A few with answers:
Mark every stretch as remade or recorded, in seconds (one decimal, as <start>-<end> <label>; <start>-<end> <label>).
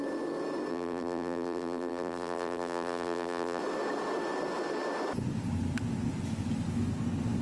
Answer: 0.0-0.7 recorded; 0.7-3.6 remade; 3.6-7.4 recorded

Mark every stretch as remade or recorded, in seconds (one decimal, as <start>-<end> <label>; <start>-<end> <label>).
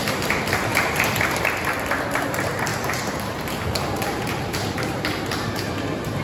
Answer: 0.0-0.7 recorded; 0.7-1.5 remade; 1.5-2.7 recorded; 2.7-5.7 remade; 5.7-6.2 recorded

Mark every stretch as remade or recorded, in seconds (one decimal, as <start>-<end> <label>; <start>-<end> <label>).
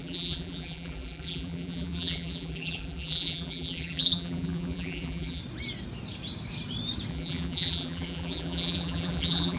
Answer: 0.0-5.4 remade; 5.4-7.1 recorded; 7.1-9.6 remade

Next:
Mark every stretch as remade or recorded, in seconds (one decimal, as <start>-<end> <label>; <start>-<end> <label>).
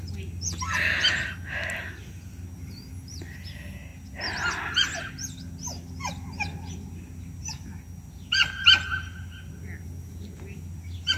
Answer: 0.0-11.2 recorded